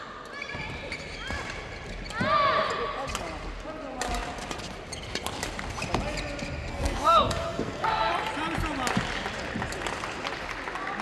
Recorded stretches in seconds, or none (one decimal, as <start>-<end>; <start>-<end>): 0.0-6.7; 8.1-11.0